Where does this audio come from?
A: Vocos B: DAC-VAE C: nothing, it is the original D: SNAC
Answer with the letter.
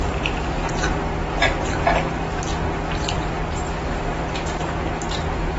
C